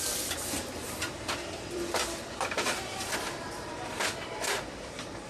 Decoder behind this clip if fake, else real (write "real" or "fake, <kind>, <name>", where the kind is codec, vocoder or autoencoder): fake, vocoder, BigVGAN v2